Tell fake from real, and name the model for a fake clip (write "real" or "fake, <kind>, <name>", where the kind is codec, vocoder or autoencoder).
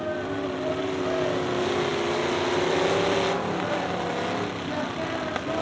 real